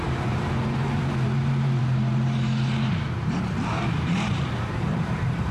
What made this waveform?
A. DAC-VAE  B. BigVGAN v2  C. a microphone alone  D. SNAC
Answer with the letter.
B